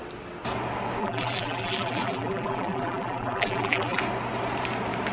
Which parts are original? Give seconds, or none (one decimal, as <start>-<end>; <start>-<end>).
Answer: 0.0-1.0; 4.0-5.1